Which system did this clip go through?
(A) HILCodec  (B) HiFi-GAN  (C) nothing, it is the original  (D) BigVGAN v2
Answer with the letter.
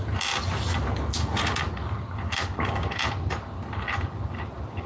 C